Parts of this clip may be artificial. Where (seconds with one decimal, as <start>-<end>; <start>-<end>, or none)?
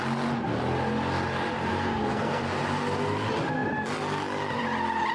1.7-2.4